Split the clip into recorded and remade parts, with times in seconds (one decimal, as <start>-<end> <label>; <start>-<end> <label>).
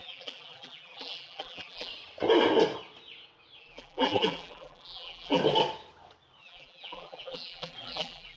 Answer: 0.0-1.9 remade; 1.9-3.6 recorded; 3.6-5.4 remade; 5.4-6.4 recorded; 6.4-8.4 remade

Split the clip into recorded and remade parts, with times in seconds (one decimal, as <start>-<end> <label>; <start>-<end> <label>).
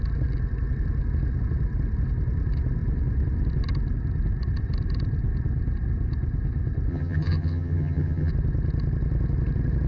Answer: 0.0-6.9 recorded; 6.9-8.3 remade; 8.3-9.9 recorded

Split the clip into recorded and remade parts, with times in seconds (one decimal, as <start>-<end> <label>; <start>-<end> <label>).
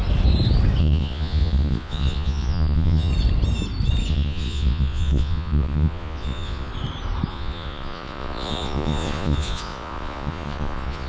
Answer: 0.0-0.8 recorded; 0.8-3.1 remade; 3.1-4.1 recorded; 4.1-6.7 remade; 6.7-7.3 recorded; 7.3-11.1 remade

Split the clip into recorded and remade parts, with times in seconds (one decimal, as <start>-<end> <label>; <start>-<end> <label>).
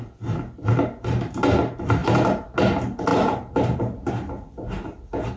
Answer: 0.0-3.1 recorded; 3.1-4.1 remade; 4.1-5.4 recorded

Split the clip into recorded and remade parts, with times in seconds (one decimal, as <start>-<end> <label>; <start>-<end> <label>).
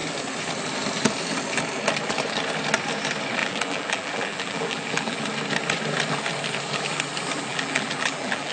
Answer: 0.0-3.4 recorded; 3.4-5.2 remade; 5.2-7.5 recorded; 7.5-8.5 remade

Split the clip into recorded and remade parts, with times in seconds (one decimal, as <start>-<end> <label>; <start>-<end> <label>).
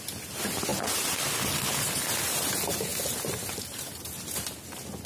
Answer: 0.0-5.1 recorded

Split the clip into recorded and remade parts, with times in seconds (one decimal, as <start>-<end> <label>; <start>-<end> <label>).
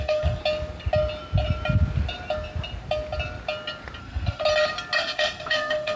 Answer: 0.0-0.4 remade; 0.4-4.0 recorded; 4.0-4.4 remade; 4.4-5.0 recorded; 5.0-6.0 remade